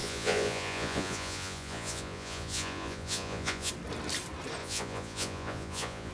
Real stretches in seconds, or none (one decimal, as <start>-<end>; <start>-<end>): 3.7-4.6